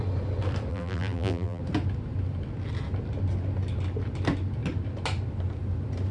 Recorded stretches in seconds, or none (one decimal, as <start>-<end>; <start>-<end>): 0.0-0.7; 1.6-6.1